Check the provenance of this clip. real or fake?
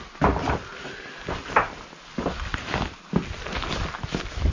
real